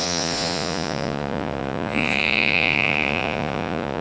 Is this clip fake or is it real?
fake